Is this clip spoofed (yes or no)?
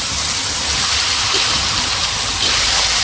no